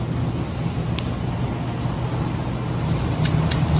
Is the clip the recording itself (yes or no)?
yes